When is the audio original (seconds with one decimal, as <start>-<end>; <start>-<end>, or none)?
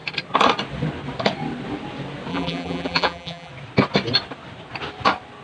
0.0-2.3; 3.5-5.4